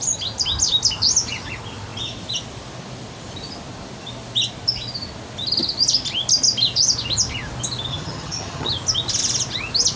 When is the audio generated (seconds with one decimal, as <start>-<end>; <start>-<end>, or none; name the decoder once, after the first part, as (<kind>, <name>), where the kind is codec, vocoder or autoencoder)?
7.9-8.7 (vocoder, HiFi-GAN)